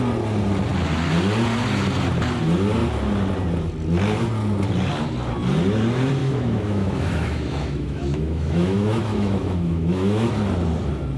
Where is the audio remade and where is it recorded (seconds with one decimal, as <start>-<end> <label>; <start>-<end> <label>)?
0.0-6.2 recorded; 6.2-10.3 remade; 10.3-11.2 recorded